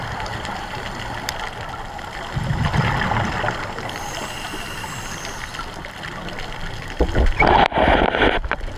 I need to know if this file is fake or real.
real